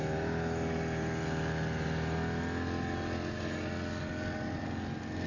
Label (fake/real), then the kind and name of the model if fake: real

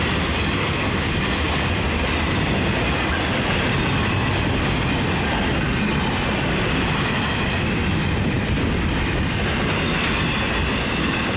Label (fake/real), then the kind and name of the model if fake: real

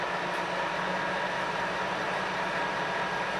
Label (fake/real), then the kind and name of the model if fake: real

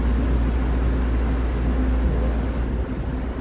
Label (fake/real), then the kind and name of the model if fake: real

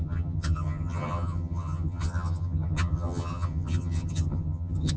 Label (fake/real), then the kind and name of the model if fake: fake, vocoder, HiFi-GAN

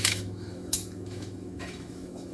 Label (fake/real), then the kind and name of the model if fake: fake, autoencoder, DAC-VAE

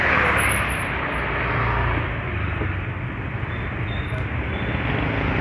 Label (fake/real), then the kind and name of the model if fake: real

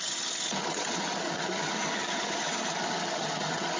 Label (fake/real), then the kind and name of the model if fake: fake, vocoder, HiFi-GAN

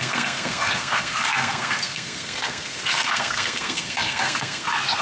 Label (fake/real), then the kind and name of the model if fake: fake, codec, SNAC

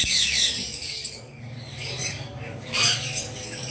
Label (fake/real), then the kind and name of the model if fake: fake, codec, DAC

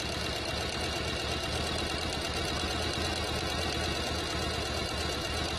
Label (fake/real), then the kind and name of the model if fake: real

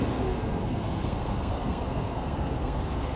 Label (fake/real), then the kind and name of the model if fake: fake, codec, SNAC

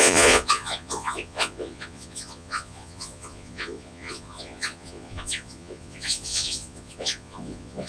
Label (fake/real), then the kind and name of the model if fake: fake, vocoder, Vocos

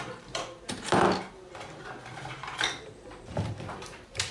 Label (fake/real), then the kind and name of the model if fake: fake, vocoder, BigVGAN v2